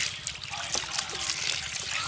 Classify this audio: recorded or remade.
recorded